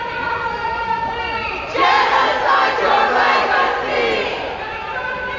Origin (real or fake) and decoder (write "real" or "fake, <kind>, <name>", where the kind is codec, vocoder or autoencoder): real